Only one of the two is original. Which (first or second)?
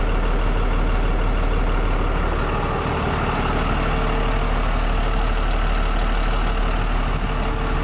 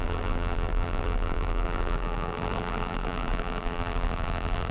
first